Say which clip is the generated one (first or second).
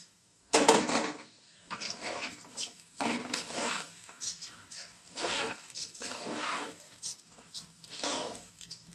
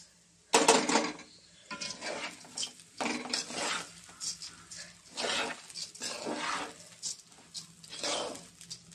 first